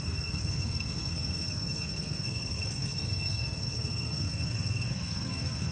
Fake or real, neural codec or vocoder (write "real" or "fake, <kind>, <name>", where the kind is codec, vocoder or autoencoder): fake, codec, SNAC